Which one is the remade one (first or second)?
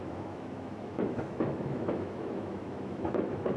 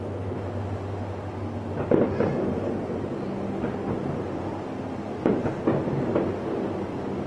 first